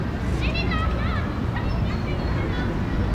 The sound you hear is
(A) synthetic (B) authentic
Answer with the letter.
B